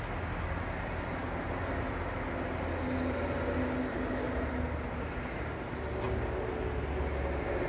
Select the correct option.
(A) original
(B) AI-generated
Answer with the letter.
A